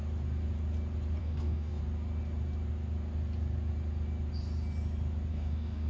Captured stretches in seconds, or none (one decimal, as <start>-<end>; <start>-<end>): 0.0-1.2; 1.8-5.3

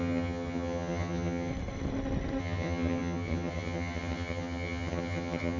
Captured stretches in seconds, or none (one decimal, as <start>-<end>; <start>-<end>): 1.5-2.4

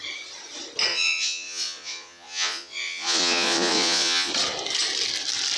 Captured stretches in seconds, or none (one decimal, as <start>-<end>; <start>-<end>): 0.0-0.9; 4.3-5.6